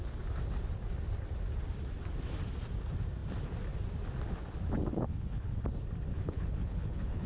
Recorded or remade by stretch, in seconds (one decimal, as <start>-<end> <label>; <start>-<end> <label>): 0.0-4.9 recorded; 4.9-5.6 remade; 5.6-6.1 recorded; 6.1-7.3 remade